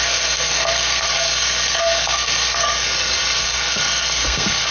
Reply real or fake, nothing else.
fake